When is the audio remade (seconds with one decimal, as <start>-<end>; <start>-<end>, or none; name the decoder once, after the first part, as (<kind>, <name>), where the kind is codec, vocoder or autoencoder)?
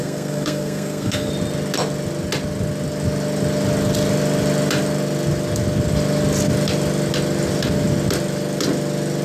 0.0-1.3 (codec, SNAC)